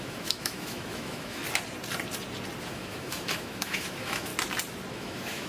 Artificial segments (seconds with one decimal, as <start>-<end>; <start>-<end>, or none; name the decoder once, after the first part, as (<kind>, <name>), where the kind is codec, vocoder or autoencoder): 0.0-1.4 (autoencoder, DAC-VAE); 2.6-4.3; 4.9-5.5

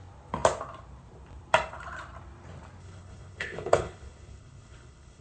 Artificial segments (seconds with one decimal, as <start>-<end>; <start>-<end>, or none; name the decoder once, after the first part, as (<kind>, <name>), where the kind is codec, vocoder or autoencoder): 2.8-5.2 (codec, HILCodec)

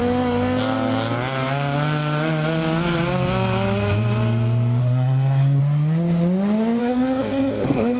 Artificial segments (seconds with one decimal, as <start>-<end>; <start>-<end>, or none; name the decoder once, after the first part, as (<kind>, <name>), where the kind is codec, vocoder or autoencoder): 4.8-5.6 (codec, SNAC); 6.8-8.0

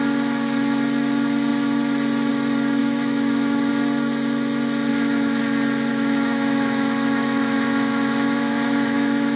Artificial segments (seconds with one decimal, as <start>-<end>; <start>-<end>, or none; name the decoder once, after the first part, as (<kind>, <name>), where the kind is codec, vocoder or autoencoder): 2.8-3.7 (autoencoder, DAC-VAE); 4.9-5.4; 5.9-9.4

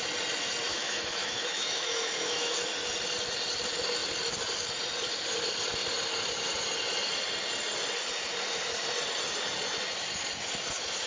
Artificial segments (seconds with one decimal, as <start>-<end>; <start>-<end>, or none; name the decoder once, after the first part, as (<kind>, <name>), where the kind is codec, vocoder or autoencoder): 0.7-2.7 (autoencoder, DAC-VAE)